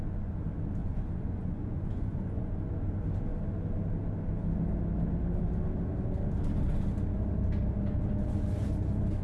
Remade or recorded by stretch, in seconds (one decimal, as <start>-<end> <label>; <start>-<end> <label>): 0.0-0.8 recorded; 0.8-2.5 remade; 2.5-9.2 recorded